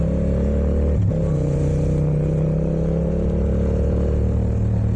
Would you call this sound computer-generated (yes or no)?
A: no